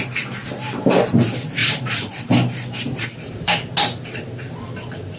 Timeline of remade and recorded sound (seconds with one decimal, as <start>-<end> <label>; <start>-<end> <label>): 0.0-1.6 recorded; 1.6-3.5 remade; 3.5-5.2 recorded